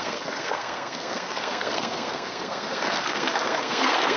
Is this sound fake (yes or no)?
yes